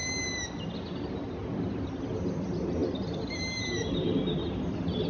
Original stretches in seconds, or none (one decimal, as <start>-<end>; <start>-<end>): 0.0-2.8; 4.2-5.1

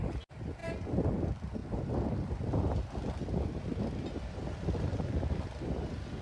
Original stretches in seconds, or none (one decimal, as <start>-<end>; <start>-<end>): 0.0-1.6; 2.7-4.9; 5.6-6.2

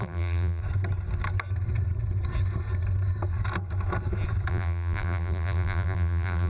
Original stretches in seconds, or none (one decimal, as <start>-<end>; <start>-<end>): 0.6-4.5

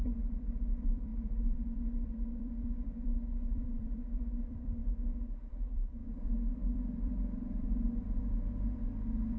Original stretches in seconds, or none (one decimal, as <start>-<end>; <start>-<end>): 4.8-5.5

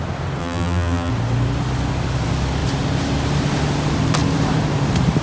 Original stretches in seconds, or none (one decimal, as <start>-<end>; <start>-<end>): 0.0-0.4; 1.1-5.2

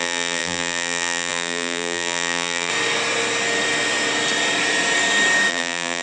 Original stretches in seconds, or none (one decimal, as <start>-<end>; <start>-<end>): 2.7-5.5